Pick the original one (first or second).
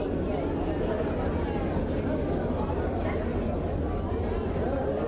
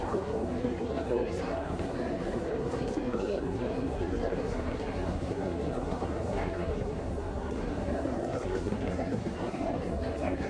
first